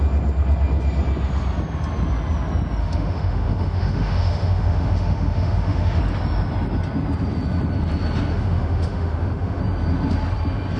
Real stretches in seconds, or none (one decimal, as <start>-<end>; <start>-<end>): 0.0-2.8; 6.0-8.3; 9.6-10.8